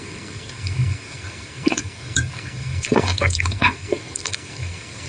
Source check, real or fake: fake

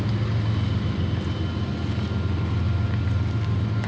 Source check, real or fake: real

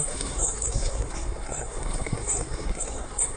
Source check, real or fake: fake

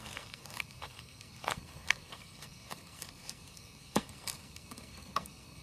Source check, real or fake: fake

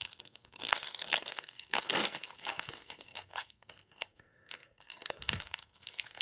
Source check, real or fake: fake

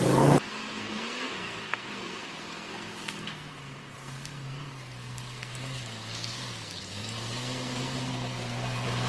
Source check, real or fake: fake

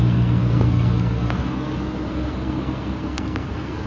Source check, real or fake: fake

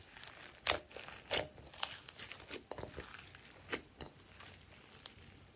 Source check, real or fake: real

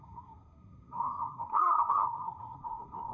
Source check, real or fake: fake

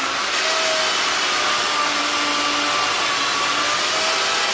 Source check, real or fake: real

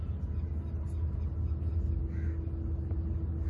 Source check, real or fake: real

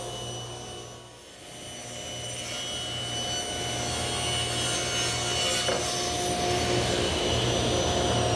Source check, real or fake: real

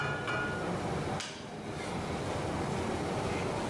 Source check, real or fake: real